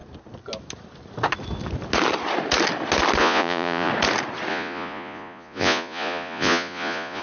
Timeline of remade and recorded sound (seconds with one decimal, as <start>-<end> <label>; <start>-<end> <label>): 0.0-3.2 recorded; 3.2-3.9 remade; 3.9-4.5 recorded; 4.5-7.2 remade